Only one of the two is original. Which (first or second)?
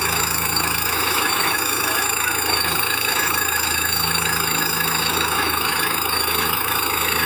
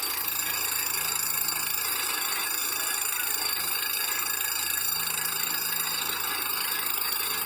second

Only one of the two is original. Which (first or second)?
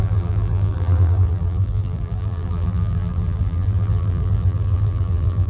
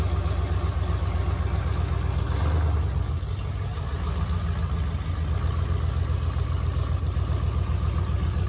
second